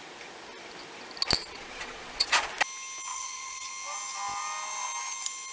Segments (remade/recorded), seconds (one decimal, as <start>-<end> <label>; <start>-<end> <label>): 0.0-1.4 recorded; 1.4-2.5 remade; 2.5-3.1 recorded; 3.1-3.7 remade; 3.7-5.5 recorded